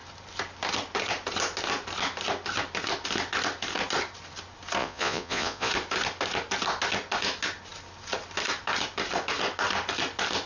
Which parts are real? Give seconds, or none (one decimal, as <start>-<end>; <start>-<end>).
0.0-4.8; 5.7-10.5